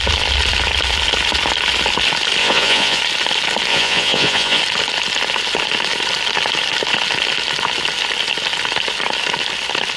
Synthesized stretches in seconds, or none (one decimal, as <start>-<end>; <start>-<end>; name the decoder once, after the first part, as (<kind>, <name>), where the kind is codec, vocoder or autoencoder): 2.4-3.0 (vocoder, Vocos); 3.7-4.6